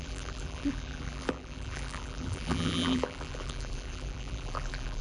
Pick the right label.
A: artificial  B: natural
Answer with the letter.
A